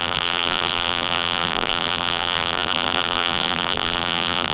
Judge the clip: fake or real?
fake